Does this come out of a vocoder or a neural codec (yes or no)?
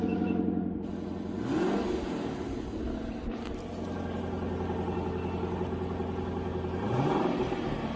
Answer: no